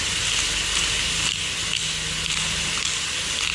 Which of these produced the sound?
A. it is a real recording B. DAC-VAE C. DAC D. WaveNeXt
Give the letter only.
A